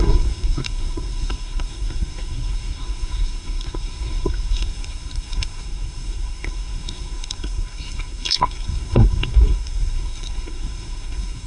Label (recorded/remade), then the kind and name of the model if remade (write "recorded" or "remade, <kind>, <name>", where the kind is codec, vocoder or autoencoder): remade, codec, SNAC